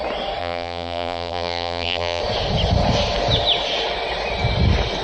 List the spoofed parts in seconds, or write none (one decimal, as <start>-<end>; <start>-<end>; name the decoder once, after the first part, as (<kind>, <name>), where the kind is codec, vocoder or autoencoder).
0.4-2.2 (vocoder, BigVGAN v2)